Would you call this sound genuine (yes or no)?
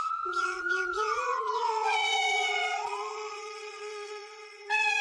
no